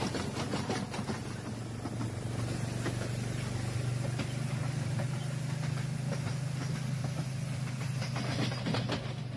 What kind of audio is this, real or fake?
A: real